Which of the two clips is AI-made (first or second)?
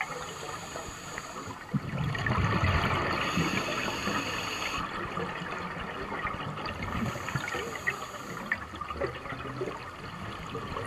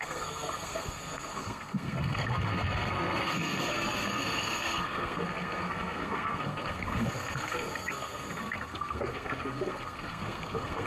second